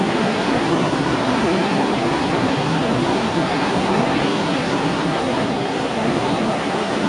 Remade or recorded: remade